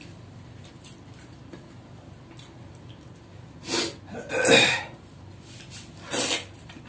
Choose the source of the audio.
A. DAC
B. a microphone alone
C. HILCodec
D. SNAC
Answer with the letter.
B